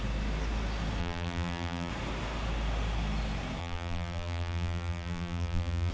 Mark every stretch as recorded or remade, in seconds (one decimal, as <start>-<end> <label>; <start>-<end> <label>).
0.0-1.0 recorded; 1.0-1.9 remade; 1.9-3.6 recorded; 3.6-5.9 remade